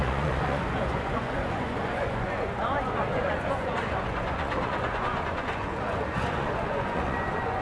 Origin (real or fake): fake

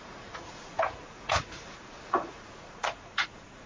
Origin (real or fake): fake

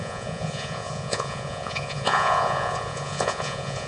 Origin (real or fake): fake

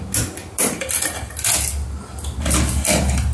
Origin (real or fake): real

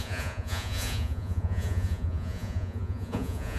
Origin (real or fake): fake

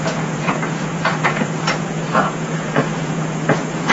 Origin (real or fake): fake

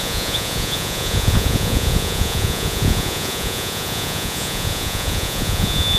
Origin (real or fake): fake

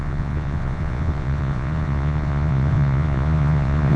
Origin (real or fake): fake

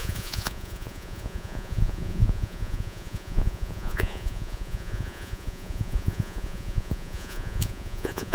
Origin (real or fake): fake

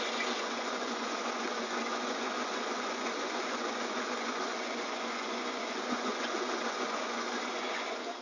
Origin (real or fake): fake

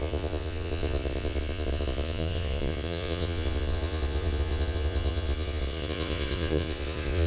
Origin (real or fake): fake